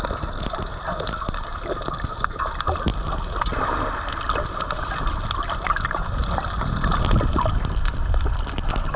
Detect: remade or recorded recorded